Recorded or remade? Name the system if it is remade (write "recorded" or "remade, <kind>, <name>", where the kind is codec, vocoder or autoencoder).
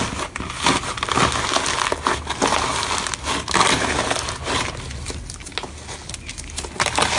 recorded